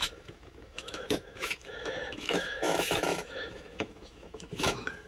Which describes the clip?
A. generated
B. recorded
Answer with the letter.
A